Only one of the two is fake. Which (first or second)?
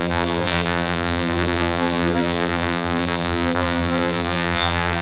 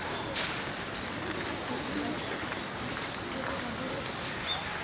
first